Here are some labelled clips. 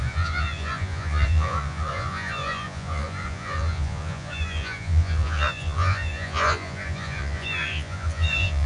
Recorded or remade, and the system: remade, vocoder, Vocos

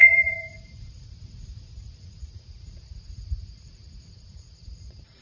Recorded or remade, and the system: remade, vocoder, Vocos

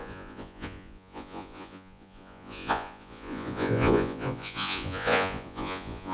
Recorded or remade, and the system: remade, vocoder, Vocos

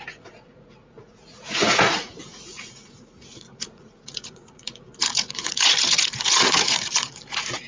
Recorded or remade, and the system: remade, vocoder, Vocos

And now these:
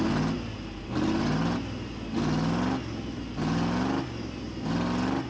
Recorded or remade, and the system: recorded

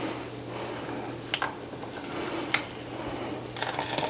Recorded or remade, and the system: recorded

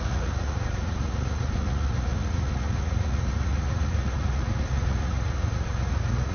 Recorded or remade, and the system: remade, vocoder, Vocos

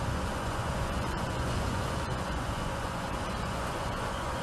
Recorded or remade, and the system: remade, vocoder, Vocos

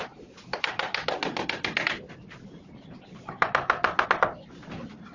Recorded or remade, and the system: recorded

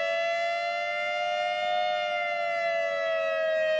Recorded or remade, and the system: recorded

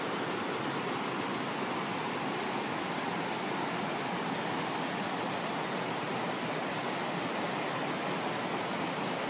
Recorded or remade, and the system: recorded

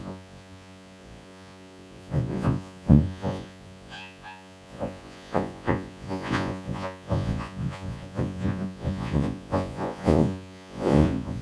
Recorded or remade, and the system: remade, vocoder, Vocos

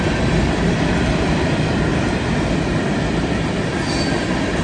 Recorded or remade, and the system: recorded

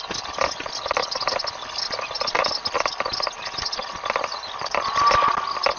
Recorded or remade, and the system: recorded